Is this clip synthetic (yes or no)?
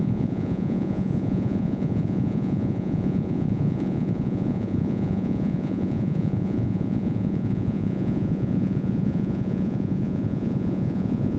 yes